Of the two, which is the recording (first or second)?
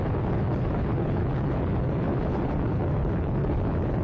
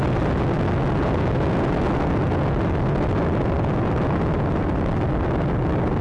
second